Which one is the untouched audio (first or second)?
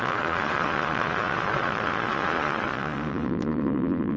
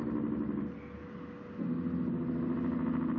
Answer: second